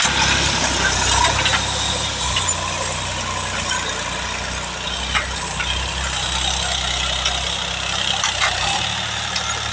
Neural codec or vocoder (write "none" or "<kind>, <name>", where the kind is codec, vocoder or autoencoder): none